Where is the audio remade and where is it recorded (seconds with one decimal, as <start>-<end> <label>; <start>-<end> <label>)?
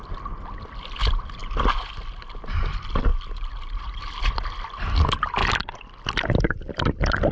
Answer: 0.0-3.1 recorded; 3.1-5.0 remade; 5.0-5.4 recorded; 5.4-7.3 remade